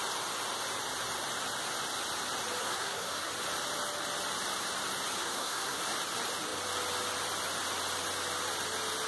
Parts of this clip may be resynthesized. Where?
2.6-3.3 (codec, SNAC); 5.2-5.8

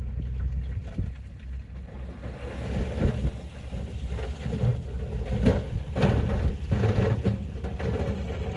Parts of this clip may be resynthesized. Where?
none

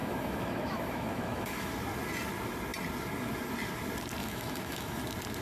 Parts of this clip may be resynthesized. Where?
0.0-1.7 (autoencoder, DAC-VAE); 4.2-5.0

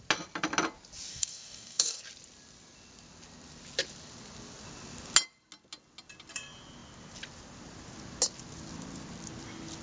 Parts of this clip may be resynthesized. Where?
1.1-2.0 (codec, DAC)

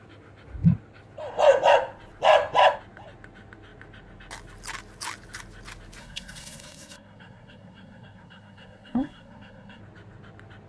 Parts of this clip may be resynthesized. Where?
6.0-9.8 (codec, SNAC)